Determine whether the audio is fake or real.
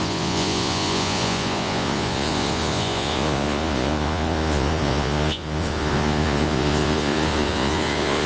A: fake